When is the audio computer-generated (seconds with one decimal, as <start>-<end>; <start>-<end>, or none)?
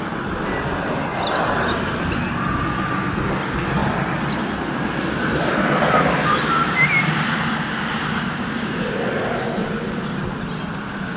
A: 3.8-9.0; 9.6-10.2